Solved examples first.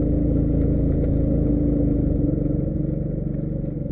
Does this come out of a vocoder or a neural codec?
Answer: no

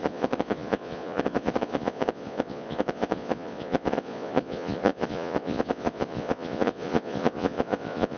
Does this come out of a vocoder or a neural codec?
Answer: yes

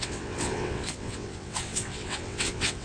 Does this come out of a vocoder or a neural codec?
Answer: yes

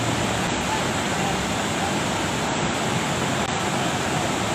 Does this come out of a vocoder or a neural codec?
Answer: no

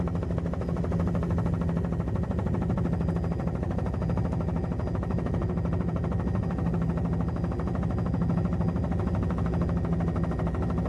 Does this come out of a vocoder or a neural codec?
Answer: no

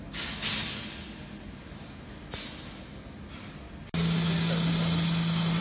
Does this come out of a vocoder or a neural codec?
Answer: no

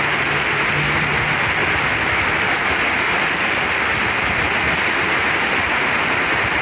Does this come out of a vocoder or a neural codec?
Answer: no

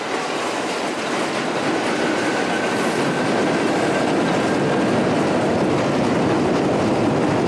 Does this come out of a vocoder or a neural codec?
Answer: no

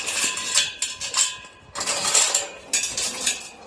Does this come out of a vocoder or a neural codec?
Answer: no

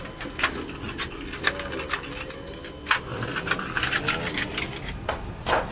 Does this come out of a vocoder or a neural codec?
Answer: no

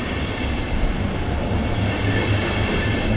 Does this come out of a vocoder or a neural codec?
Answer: no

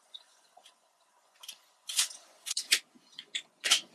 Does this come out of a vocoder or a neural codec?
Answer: yes